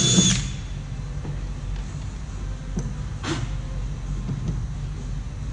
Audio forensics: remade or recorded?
recorded